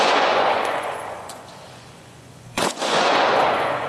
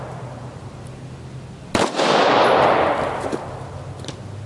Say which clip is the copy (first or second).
first